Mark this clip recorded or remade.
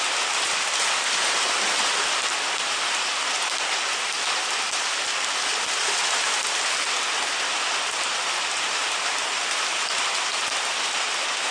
recorded